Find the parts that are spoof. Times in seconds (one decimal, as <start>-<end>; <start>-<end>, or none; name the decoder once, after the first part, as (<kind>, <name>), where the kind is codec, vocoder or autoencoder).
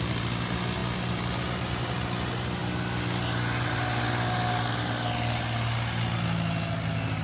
none